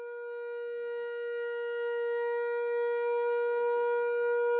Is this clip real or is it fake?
real